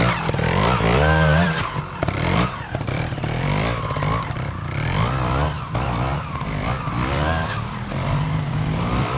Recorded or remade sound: remade